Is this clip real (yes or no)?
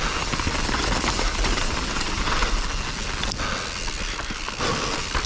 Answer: yes